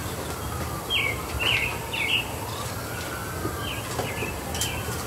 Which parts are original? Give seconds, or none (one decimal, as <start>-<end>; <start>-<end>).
0.0-5.1